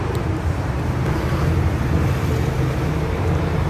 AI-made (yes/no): yes